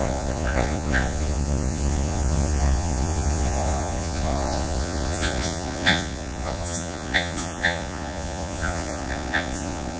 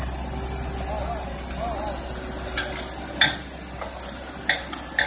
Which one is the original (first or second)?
second